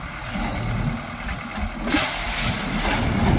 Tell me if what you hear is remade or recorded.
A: recorded